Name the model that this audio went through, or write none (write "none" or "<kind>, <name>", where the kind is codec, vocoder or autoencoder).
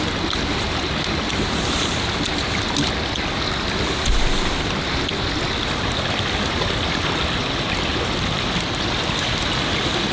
none